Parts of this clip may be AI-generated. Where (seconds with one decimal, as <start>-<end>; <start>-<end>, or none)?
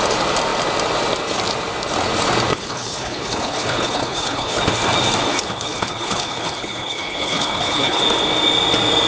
2.5-4.6; 5.3-8.0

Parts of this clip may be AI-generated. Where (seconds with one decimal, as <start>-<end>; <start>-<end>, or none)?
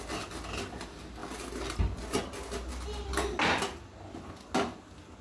none